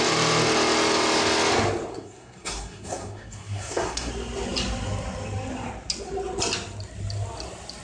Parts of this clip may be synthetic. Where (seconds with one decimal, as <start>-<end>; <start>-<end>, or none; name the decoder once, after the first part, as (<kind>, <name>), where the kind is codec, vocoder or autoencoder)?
1.9-4.1 (codec, SNAC)